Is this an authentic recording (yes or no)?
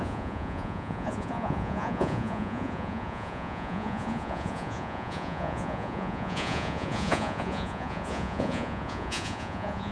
no